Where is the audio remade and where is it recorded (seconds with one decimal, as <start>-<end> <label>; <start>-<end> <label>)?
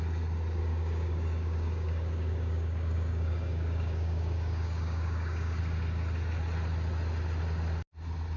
0.0-0.6 recorded; 0.6-5.6 remade; 5.6-8.4 recorded